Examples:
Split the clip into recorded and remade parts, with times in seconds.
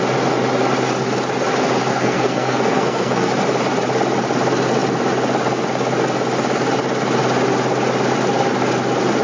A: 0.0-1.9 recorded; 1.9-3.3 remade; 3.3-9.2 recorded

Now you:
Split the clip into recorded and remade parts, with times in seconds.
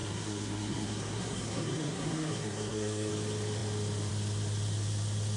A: 0.0-3.1 remade; 3.1-5.4 recorded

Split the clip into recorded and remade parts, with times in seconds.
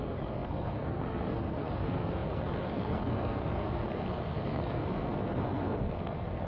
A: 0.0-6.5 remade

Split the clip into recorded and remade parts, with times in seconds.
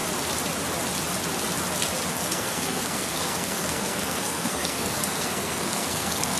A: 0.0-2.1 recorded; 2.1-6.4 remade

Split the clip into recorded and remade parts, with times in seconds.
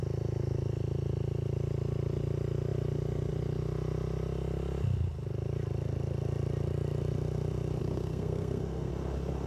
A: 0.0-7.8 recorded; 7.8-8.9 remade; 8.9-9.5 recorded